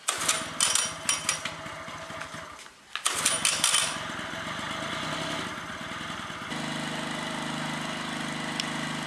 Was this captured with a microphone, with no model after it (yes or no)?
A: yes